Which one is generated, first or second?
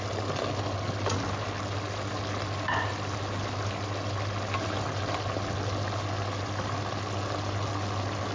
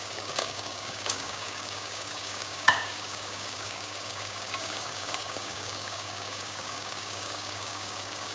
second